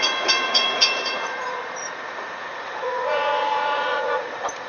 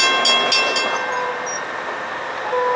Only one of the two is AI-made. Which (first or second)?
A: first